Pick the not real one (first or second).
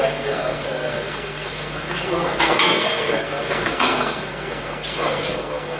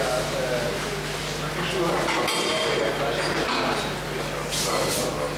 first